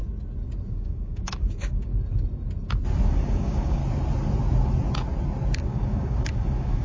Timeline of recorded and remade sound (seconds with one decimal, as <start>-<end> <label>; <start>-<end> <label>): 0.0-0.7 recorded; 0.7-1.9 remade; 1.9-3.1 recorded; 3.1-3.8 remade; 3.8-5.6 recorded; 5.6-6.8 remade